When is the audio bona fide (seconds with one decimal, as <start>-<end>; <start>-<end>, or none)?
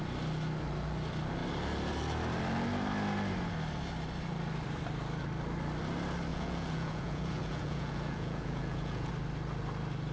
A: 0.0-6.3; 9.1-10.1